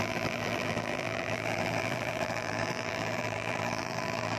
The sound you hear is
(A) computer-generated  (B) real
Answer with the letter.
A